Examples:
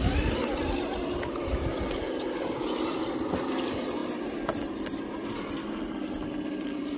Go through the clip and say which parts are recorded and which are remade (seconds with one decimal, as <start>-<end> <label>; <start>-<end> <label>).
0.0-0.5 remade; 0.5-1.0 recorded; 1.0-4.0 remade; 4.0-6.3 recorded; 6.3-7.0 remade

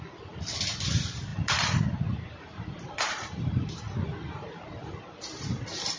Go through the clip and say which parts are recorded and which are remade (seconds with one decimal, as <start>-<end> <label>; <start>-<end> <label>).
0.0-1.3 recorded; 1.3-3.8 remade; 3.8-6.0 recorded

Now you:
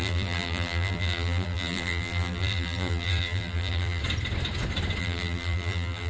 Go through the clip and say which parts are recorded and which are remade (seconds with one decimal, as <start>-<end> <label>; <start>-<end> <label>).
0.0-4.0 remade; 4.0-5.0 recorded; 5.0-6.1 remade

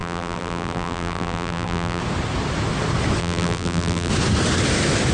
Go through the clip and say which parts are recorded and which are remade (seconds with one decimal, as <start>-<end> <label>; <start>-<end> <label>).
0.0-2.0 remade; 2.0-3.2 recorded; 3.2-4.1 remade; 4.1-5.1 recorded

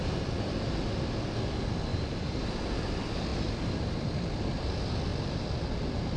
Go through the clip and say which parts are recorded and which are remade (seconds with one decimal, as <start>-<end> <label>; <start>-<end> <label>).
0.0-1.9 recorded; 1.9-2.5 remade; 2.5-6.2 recorded